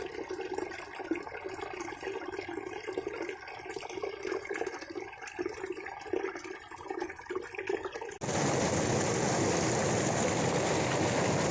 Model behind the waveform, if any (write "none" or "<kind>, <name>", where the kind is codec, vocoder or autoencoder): none